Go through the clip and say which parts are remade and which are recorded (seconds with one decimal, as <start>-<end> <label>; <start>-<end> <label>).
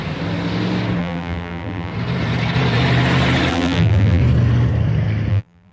0.0-1.0 recorded; 1.0-1.9 remade; 1.9-3.5 recorded; 3.5-4.2 remade; 4.2-5.3 recorded; 5.3-5.7 remade